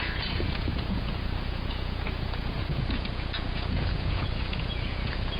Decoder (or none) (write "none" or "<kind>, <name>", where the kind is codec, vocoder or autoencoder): vocoder, Vocos